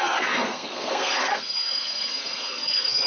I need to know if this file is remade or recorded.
remade